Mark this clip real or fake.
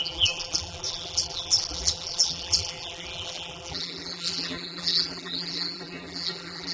fake